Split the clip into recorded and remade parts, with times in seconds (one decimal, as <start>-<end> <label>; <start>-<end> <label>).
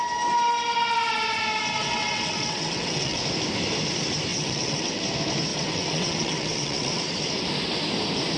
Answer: 0.0-1.8 recorded; 1.8-3.2 remade; 3.2-4.3 recorded; 4.3-5.0 remade; 5.0-5.5 recorded; 5.5-7.0 remade; 7.0-8.4 recorded